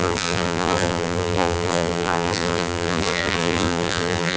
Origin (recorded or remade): remade